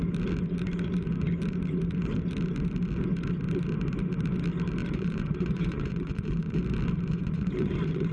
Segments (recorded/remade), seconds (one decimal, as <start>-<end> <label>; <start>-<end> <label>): 0.0-4.8 recorded; 4.8-6.6 remade; 6.6-7.1 recorded; 7.1-8.1 remade